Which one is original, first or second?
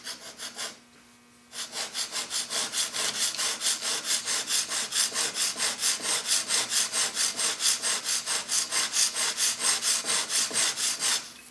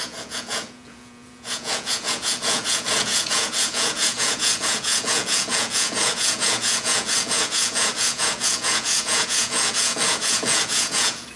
first